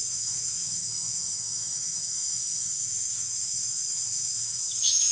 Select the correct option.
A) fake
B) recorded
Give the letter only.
A